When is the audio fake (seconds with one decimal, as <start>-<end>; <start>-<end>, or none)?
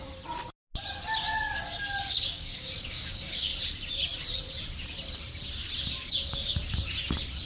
2.3-3.5